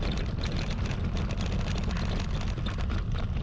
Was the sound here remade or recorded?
recorded